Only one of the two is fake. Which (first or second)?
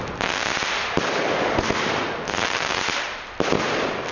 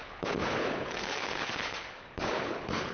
second